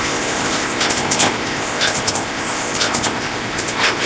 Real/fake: fake